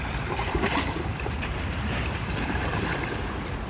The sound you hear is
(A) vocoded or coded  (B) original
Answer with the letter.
A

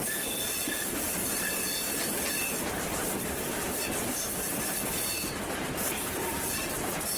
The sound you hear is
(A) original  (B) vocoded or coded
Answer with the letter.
A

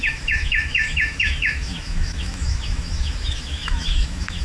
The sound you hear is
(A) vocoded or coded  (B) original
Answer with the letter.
A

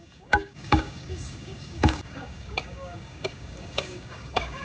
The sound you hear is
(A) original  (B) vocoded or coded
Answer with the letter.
B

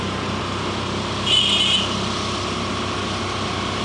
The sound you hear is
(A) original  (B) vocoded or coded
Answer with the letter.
A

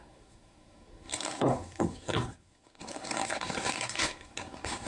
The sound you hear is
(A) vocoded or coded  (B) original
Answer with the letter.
A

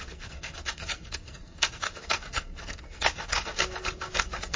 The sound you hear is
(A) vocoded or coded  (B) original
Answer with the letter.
A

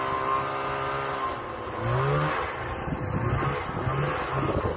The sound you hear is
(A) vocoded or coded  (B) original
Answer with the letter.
B